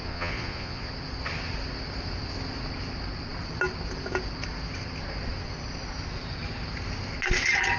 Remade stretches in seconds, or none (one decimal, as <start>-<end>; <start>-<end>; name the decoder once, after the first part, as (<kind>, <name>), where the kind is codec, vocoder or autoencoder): 0.0-0.9 (vocoder, Vocos)